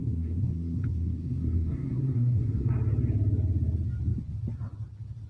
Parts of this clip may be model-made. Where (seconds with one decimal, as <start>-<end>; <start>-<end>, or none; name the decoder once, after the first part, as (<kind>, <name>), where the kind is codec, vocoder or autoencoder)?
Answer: 0.0-2.7 (codec, SNAC)